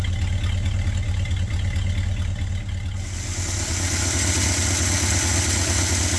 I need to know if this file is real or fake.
real